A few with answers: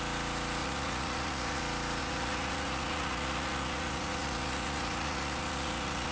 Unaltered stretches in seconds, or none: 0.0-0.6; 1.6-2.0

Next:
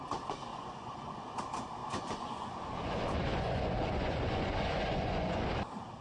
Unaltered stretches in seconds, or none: 0.0-0.5; 1.4-1.8; 5.4-6.0

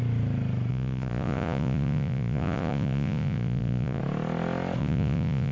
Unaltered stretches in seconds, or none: 0.0-0.7; 4.0-4.8

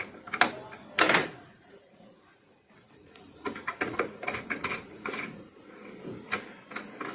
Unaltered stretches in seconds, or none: 0.0-1.2; 5.5-7.1

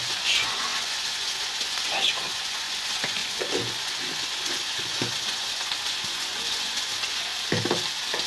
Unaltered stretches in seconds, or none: 7.3-8.3

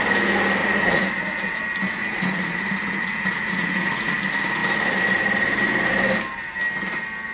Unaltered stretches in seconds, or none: 0.0-0.6; 1.6-2.0; 4.1-7.3